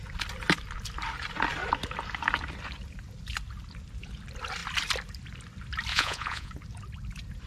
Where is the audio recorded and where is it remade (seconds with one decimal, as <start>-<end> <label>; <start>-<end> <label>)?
0.0-5.9 recorded; 5.9-6.5 remade; 6.5-7.5 recorded